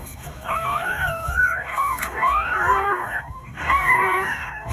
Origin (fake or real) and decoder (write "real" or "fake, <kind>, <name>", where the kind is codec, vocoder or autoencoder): fake, codec, DAC